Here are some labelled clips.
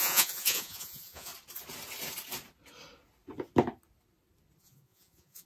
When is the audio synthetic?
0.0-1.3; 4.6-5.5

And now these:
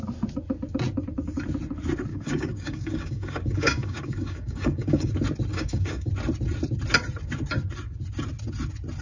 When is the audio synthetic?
2.1-5.1; 5.5-6.1

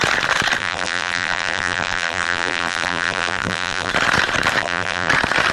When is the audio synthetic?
0.6-3.9; 4.6-5.1

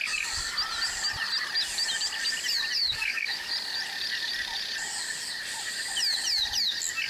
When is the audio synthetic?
2.8-3.5